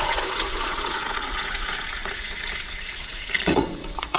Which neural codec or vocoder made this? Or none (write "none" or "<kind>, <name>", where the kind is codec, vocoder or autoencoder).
vocoder, Vocos